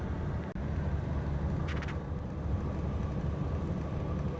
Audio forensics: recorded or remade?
recorded